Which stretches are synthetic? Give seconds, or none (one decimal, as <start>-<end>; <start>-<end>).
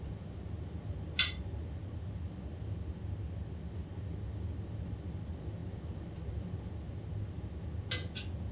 none